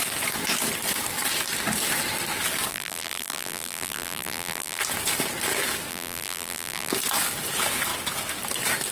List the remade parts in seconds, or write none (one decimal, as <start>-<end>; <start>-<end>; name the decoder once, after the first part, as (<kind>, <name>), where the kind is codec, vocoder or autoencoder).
2.7-4.8 (vocoder, BigVGAN v2); 5.9-6.9